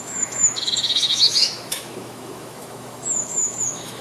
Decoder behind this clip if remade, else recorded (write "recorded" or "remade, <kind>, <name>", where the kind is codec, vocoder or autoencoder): remade, autoencoder, DAC-VAE